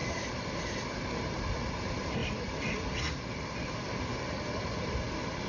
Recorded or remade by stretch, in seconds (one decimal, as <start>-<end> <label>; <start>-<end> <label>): 0.0-5.5 recorded